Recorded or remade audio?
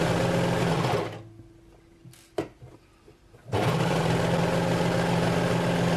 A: recorded